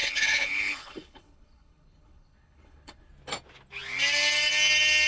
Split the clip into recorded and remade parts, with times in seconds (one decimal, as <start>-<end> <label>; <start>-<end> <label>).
0.0-3.1 remade; 3.1-5.1 recorded